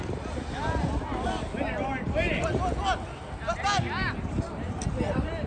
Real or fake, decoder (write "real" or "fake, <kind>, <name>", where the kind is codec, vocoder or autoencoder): real